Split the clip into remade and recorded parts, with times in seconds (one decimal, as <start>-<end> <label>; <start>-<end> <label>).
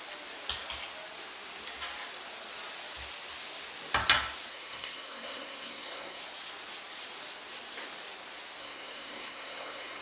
0.0-4.5 recorded; 4.5-6.2 remade; 6.2-8.6 recorded; 8.6-10.0 remade